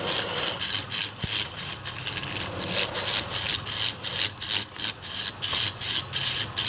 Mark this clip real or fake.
real